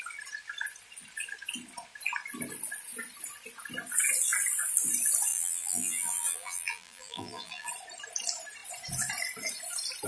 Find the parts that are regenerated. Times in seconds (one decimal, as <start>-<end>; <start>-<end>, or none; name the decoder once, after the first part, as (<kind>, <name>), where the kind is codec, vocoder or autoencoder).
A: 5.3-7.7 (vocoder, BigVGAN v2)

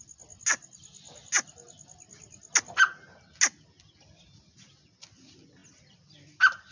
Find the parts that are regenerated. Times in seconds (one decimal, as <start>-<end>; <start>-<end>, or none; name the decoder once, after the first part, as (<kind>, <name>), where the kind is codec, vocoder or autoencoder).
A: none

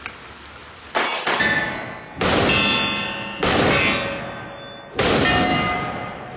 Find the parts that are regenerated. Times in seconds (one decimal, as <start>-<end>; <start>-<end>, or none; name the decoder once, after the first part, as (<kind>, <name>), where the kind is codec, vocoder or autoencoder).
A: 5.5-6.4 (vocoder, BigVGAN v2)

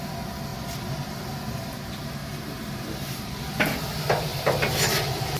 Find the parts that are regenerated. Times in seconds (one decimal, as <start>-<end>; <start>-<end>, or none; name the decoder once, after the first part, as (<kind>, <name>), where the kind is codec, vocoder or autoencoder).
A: 0.5-1.1 (vocoder, BigVGAN v2); 2.2-3.3; 4.3-5.4